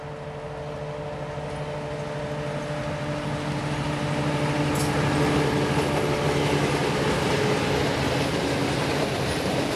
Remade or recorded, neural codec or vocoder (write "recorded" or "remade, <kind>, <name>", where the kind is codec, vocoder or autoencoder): recorded